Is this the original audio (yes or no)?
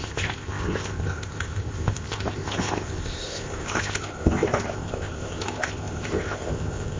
no